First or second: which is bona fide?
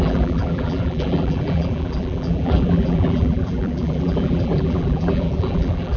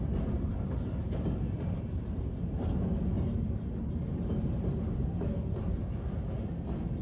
second